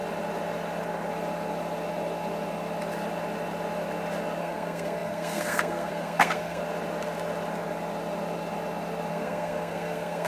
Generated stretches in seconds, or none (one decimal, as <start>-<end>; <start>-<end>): 4.4-6.6; 9.1-10.3